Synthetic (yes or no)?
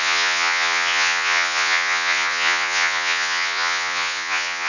yes